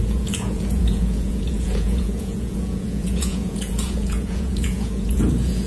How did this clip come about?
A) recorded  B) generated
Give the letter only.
B